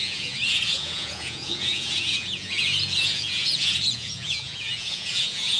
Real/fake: fake